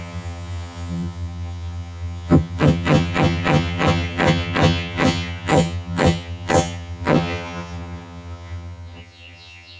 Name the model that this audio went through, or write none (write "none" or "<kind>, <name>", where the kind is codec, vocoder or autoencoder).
vocoder, HiFi-GAN